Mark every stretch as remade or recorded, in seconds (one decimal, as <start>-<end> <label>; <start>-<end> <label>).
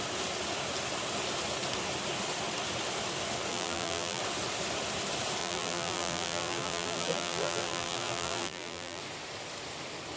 0.0-3.5 recorded; 3.5-4.2 remade; 4.2-5.4 recorded; 5.4-9.0 remade; 9.0-10.2 recorded